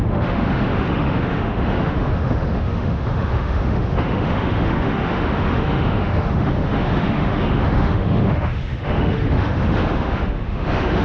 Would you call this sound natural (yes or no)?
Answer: no